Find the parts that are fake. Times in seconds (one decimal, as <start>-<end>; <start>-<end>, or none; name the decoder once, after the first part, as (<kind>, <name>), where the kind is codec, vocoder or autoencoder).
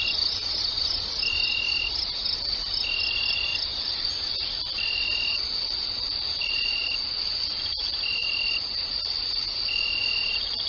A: 3.5-6.8 (vocoder, BigVGAN v2); 8.2-10.0